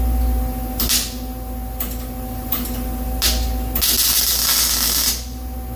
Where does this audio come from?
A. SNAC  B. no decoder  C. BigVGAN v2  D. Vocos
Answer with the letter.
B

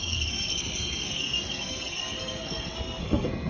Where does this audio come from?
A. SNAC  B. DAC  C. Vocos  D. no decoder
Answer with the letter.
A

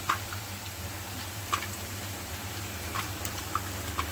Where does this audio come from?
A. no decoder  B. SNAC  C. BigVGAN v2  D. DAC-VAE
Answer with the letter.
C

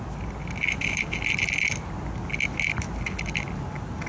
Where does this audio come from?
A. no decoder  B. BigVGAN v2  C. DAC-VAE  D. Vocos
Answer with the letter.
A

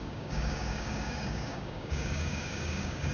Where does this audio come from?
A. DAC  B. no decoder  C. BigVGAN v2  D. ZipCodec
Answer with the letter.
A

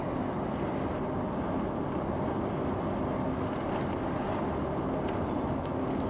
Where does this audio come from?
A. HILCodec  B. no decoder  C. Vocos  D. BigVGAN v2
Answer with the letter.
B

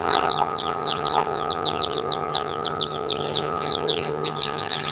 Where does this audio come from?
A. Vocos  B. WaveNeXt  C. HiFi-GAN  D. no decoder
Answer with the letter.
C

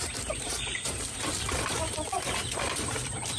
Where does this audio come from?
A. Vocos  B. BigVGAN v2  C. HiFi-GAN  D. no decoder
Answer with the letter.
B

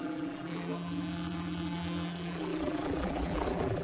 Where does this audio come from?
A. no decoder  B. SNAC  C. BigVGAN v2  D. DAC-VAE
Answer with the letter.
C